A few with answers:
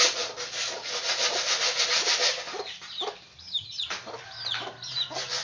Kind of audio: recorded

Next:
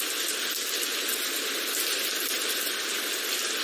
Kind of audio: recorded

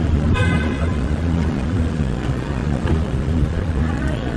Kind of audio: remade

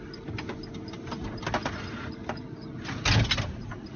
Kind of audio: recorded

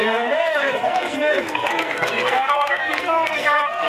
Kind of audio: remade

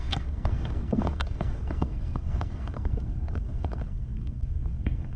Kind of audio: remade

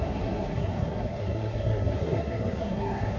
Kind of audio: remade